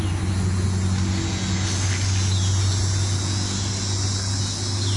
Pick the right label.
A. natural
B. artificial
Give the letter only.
A